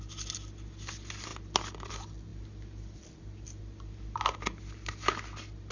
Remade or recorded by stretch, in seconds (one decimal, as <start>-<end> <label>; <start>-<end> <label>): 0.0-5.7 recorded